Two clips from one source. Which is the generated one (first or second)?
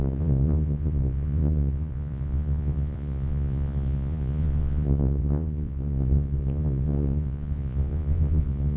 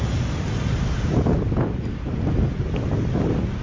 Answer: first